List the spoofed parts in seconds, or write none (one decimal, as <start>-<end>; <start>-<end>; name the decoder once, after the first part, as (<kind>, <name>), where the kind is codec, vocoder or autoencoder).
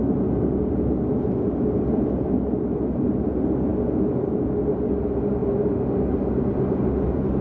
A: none